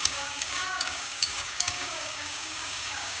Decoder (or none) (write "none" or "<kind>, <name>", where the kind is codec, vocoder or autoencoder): codec, DAC